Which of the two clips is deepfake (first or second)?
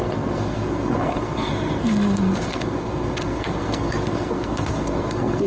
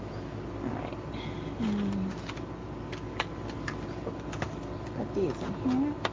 first